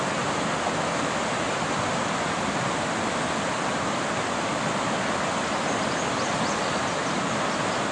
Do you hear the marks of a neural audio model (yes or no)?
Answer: no